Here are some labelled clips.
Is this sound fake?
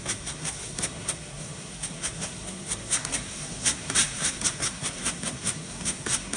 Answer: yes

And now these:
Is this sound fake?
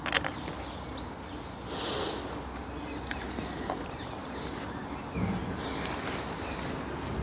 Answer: no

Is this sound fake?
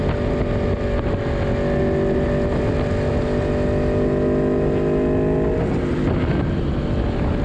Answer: no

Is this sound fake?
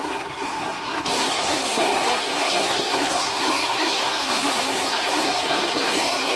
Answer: yes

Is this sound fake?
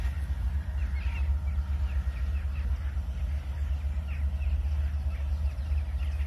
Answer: no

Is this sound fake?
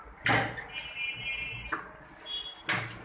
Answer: no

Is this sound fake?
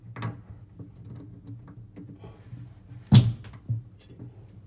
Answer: no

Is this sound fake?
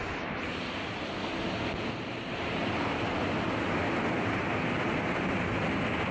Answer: no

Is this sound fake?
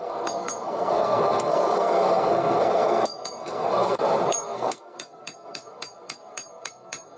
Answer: yes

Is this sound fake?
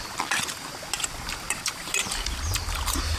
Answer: no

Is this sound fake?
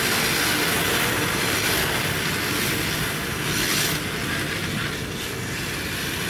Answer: no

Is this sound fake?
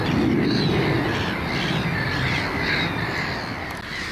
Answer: no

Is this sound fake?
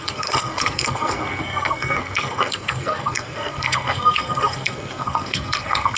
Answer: yes